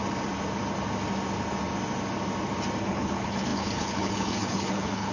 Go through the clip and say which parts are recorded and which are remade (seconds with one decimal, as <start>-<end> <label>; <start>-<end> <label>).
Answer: 0.0-2.8 recorded; 2.8-5.1 remade